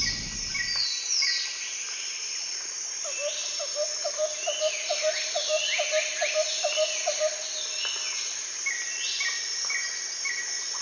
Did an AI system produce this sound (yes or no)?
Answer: no